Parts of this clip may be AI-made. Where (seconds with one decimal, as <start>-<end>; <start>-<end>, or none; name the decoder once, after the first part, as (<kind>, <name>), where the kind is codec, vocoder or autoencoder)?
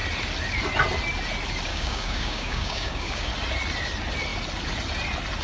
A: 1.7-3.3 (codec, DAC)